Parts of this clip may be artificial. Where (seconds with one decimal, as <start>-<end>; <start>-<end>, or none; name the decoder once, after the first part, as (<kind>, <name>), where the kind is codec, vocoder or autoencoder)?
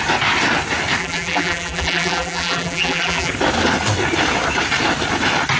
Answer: 1.0-3.3 (vocoder, BigVGAN v2)